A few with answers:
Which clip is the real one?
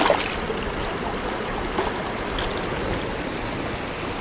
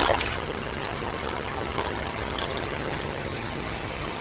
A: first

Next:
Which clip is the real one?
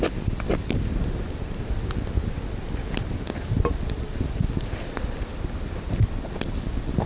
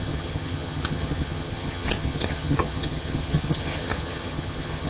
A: first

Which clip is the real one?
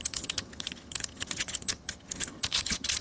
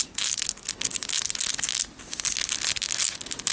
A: second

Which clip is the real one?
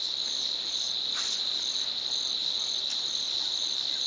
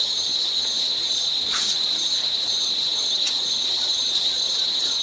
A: first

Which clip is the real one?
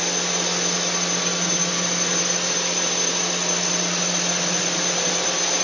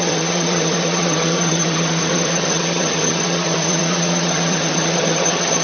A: first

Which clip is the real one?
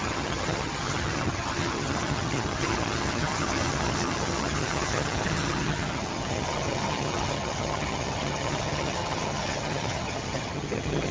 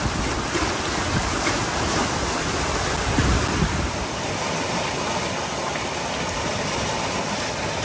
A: second